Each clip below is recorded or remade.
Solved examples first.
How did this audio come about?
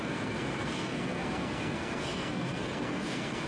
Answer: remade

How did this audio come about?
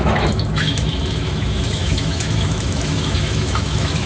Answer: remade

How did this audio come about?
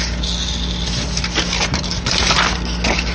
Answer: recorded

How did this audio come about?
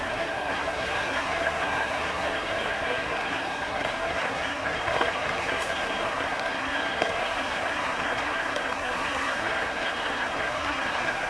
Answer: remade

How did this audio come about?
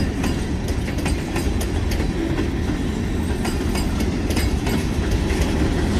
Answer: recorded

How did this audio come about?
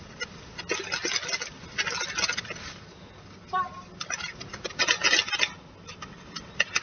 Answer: recorded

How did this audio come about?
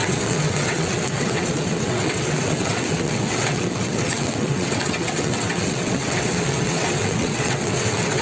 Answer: remade